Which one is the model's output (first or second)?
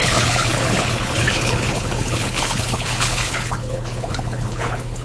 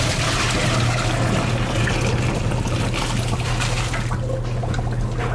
first